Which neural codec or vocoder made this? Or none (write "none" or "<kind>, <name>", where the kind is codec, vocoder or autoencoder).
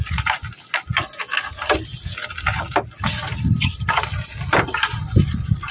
none